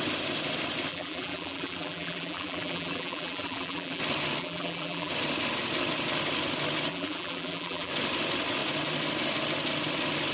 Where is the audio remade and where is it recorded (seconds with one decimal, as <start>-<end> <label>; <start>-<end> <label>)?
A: 0.0-0.9 recorded; 0.9-4.0 remade; 4.0-4.4 recorded; 4.4-5.1 remade; 5.1-6.9 recorded; 6.9-7.9 remade; 7.9-10.3 recorded